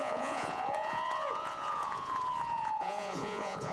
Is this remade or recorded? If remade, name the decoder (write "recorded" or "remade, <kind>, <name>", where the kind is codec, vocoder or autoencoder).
remade, vocoder, Vocos